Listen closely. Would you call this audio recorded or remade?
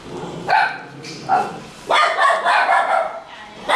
recorded